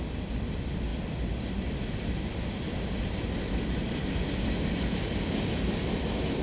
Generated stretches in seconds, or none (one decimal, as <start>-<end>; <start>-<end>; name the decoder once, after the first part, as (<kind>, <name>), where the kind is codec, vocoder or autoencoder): none